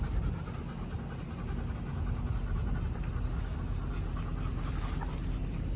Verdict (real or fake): real